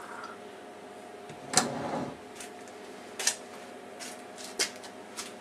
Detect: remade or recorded recorded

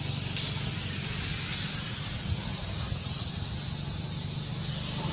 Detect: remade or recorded recorded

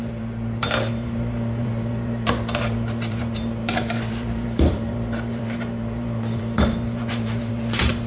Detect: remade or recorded remade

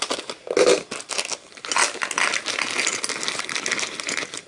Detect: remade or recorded recorded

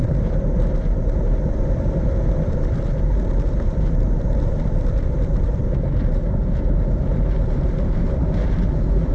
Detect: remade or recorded remade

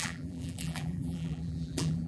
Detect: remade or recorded remade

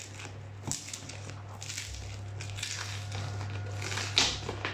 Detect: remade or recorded recorded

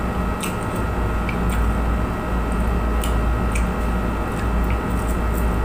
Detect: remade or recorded recorded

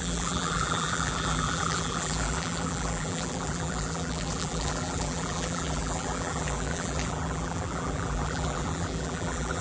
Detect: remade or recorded remade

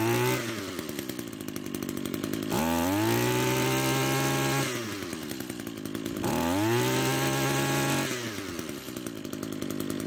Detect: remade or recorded recorded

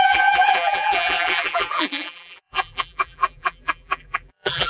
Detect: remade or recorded remade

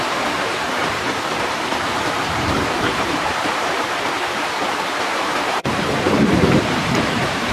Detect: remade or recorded remade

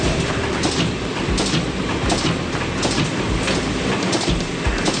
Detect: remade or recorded remade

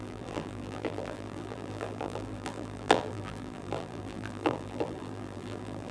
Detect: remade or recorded remade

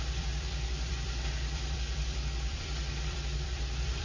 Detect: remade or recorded remade